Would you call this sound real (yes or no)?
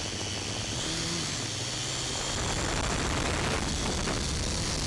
yes